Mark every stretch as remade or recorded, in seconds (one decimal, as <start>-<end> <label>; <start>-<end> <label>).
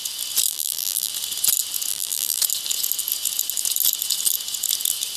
0.0-0.5 recorded; 0.5-1.1 remade; 1.1-1.9 recorded; 1.9-2.4 remade; 2.4-5.2 recorded